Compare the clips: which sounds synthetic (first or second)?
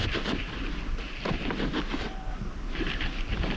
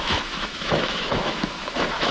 second